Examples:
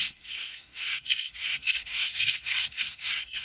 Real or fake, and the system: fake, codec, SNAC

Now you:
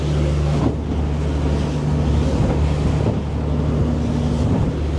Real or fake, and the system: real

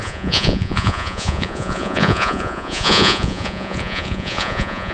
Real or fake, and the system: fake, vocoder, Vocos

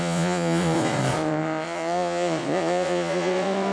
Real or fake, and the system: fake, vocoder, Vocos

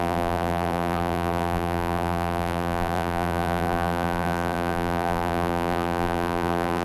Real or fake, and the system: fake, vocoder, BigVGAN v2